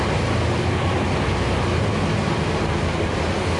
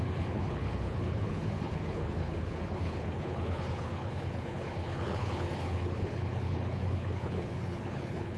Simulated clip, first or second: second